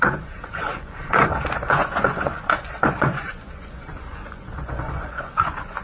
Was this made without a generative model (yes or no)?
no